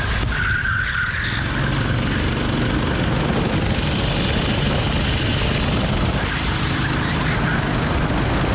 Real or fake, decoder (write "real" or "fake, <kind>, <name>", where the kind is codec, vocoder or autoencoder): real